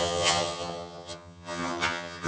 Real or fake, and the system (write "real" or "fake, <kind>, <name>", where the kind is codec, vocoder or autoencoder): fake, vocoder, HiFi-GAN